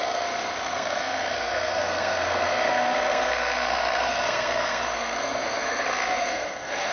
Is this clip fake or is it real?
fake